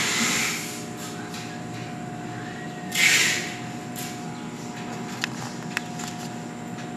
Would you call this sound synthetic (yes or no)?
no